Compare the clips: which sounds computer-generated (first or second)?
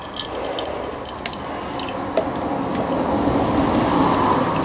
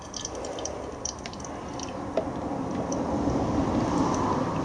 second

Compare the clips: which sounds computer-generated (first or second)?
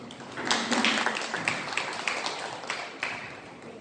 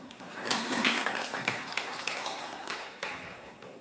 second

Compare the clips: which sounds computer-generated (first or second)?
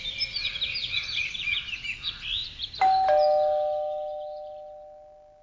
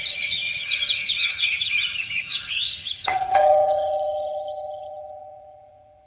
second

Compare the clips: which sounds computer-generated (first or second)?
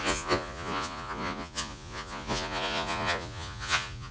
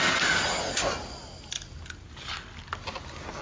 first